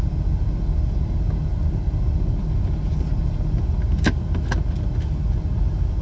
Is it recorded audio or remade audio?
recorded